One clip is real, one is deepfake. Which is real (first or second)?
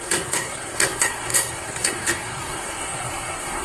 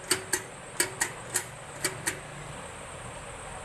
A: second